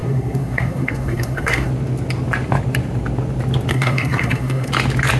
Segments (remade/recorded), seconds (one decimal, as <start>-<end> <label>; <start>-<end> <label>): 0.0-1.7 remade; 1.7-3.7 recorded; 3.7-4.7 remade; 4.7-5.2 recorded